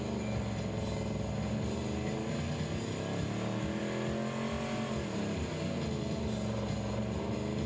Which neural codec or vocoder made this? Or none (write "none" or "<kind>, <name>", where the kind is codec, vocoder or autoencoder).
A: none